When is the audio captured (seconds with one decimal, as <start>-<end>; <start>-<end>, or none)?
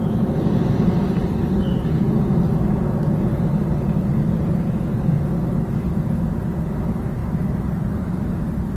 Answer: 0.0-7.2; 8.3-8.8